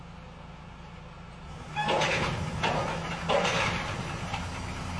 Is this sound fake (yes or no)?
no